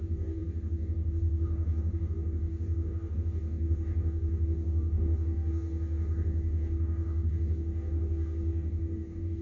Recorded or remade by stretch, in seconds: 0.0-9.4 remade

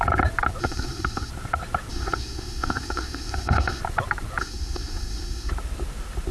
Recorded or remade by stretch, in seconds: 0.0-0.6 recorded; 0.6-1.3 remade; 1.3-1.9 recorded; 1.9-3.8 remade; 3.8-4.4 recorded; 4.4-5.5 remade; 5.5-6.3 recorded

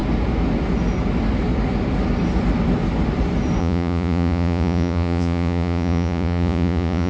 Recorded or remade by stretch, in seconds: 0.0-3.6 recorded; 3.6-7.1 remade